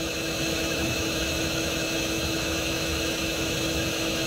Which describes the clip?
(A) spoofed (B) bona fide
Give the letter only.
A